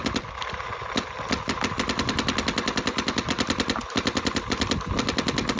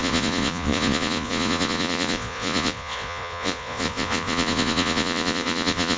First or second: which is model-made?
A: second